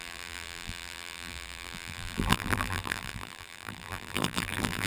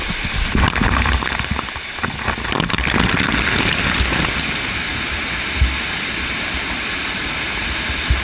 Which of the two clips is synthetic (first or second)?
first